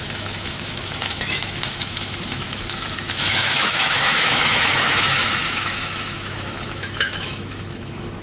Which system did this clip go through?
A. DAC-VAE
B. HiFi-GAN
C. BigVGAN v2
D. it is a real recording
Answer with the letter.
A